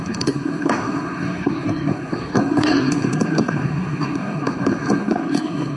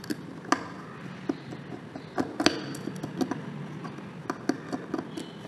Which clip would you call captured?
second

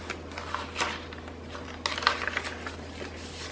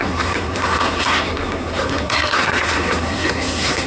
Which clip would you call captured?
first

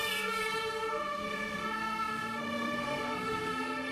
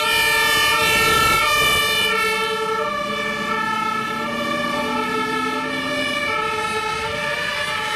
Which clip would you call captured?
second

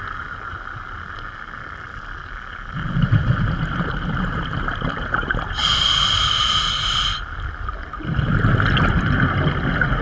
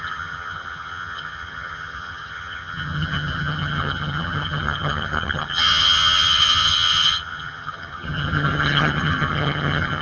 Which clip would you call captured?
first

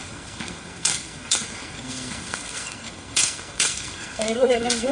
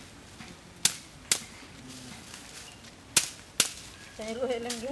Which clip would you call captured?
second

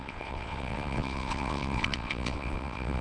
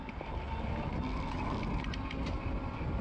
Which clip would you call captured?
second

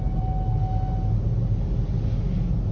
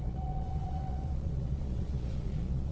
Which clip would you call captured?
first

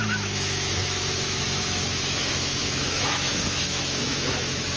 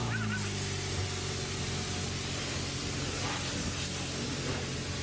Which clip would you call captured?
second